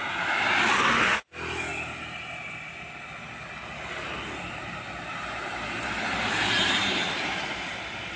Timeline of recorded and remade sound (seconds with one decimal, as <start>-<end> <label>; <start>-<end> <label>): 0.0-1.7 recorded; 1.7-2.8 remade; 2.8-5.1 recorded; 5.1-7.7 remade; 7.7-8.2 recorded